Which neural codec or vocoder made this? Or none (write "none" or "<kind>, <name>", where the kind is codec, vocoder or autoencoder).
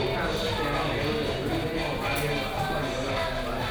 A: none